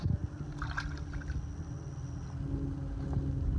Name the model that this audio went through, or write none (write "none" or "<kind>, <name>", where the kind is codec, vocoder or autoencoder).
none